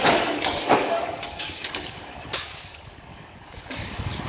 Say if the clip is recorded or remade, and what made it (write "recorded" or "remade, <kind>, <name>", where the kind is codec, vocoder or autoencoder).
remade, codec, DAC